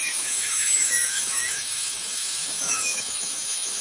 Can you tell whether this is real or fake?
fake